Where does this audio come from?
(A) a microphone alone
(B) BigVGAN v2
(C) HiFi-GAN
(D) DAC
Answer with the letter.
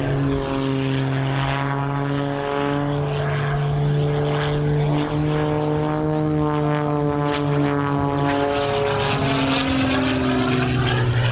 A